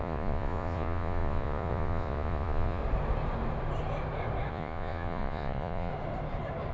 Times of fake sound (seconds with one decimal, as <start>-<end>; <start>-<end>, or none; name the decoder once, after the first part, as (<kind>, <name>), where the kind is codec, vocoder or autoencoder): 0.0-2.8 (vocoder, Vocos); 4.5-5.9